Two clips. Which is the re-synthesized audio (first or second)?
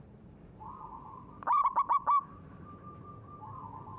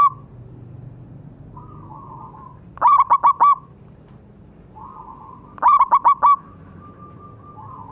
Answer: first